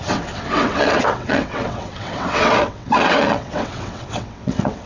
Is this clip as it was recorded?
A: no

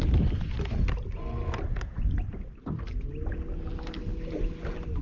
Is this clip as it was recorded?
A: yes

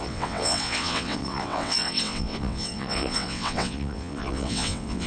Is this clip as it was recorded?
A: no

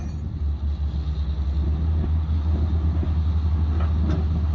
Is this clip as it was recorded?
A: yes